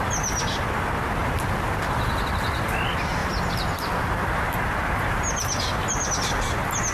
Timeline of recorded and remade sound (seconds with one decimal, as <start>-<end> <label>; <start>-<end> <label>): 0.0-1.2 recorded; 1.2-2.3 remade; 2.3-3.2 recorded; 3.2-4.2 remade; 4.2-6.9 recorded